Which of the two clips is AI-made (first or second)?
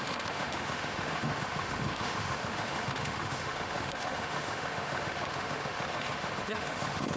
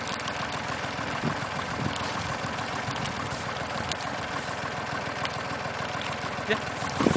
first